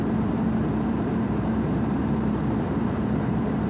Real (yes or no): no